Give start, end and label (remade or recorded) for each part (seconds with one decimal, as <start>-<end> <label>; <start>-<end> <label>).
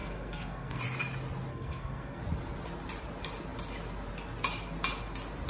0.0-0.8 remade; 0.8-1.5 recorded; 1.5-2.2 remade; 2.2-5.5 recorded